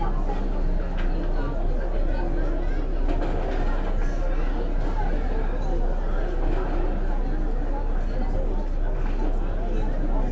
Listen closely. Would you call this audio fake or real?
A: real